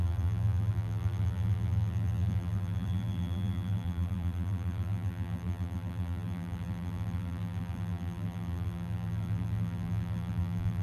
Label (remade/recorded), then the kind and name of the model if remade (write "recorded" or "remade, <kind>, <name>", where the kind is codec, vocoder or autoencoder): remade, vocoder, BigVGAN v2